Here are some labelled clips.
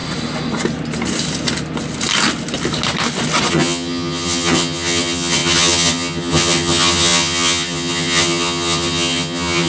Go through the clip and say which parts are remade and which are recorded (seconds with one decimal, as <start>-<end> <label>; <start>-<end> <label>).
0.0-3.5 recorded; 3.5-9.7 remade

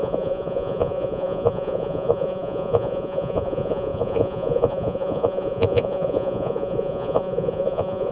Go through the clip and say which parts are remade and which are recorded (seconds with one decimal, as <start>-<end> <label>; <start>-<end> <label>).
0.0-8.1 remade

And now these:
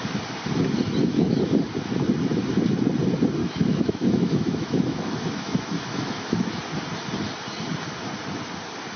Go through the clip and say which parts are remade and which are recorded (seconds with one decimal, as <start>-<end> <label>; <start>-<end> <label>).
0.0-1.0 recorded; 1.0-1.5 remade; 1.5-3.4 recorded; 3.4-6.6 remade; 6.6-9.0 recorded

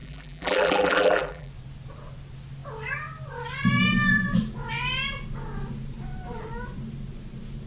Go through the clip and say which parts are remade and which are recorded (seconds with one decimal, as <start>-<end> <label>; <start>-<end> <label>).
0.0-1.5 remade; 1.5-7.7 recorded

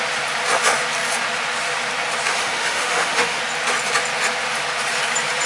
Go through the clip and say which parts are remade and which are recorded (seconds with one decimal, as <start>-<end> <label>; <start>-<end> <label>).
0.0-2.3 recorded; 2.3-3.4 remade; 3.4-5.5 recorded